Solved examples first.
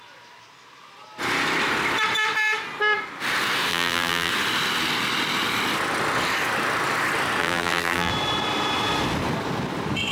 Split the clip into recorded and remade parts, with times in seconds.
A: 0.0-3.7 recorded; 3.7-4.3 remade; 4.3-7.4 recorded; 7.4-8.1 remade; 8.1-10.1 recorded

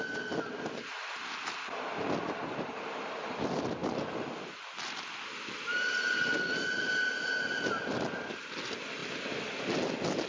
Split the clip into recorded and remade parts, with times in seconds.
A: 0.0-10.3 recorded

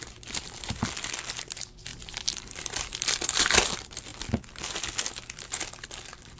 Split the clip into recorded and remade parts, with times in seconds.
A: 0.0-1.9 recorded; 1.9-3.4 remade; 3.4-6.4 recorded

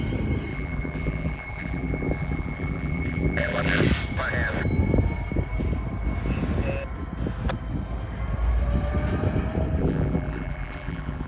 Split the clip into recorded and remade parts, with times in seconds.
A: 0.0-0.5 recorded; 0.5-3.8 remade; 3.8-9.8 recorded; 9.8-11.3 remade